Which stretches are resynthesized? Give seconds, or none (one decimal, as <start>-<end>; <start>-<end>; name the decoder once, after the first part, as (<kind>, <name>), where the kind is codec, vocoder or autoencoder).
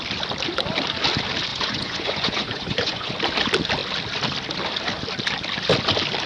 1.5-3.1 (vocoder, Vocos)